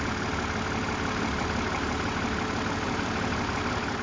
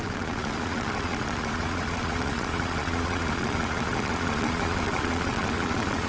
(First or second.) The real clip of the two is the first